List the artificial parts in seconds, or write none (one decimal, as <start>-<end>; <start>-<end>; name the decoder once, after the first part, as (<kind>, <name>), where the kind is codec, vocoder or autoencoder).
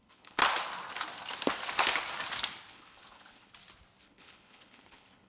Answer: 0.0-0.4 (codec, HILCodec); 2.7-3.5; 4.0-5.3